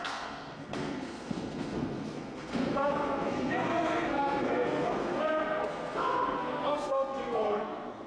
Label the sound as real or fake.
fake